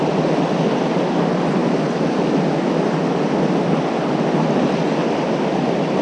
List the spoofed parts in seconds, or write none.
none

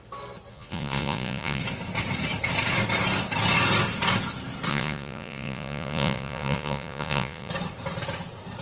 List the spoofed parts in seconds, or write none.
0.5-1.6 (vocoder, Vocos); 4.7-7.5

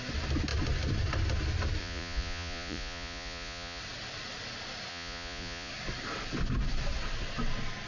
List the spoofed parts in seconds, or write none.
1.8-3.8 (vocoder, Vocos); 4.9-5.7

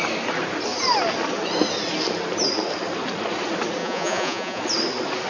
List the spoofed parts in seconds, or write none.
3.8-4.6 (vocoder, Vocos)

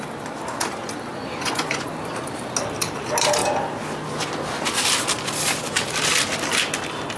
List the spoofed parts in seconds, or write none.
1.1-1.9 (vocoder, Vocos)

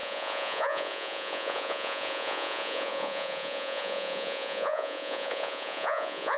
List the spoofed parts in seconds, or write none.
0.0-6.4 (vocoder, Vocos)